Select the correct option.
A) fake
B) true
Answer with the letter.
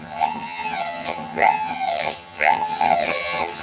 A